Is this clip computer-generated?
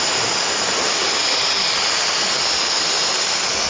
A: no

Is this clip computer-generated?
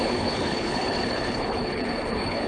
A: yes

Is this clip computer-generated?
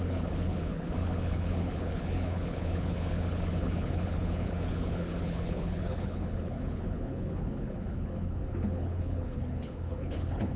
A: yes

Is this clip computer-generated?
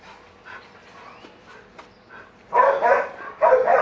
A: no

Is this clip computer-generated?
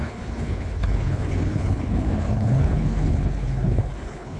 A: yes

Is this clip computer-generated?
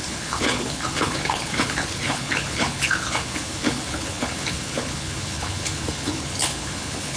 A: yes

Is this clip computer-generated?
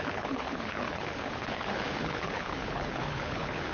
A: yes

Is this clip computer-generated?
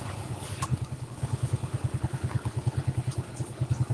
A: yes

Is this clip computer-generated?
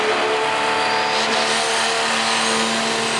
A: no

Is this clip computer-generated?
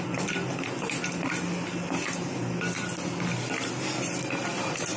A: no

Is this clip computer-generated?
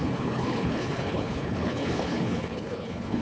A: yes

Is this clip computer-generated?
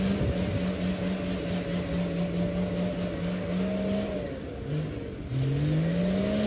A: no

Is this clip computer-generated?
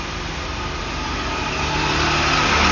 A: no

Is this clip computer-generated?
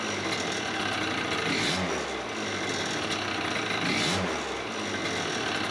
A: no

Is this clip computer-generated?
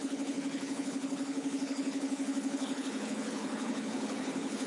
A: yes